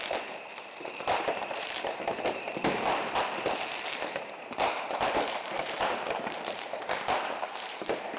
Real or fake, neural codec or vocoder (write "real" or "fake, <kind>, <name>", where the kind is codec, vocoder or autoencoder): fake, vocoder, BigVGAN v2